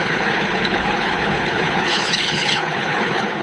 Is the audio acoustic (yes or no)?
no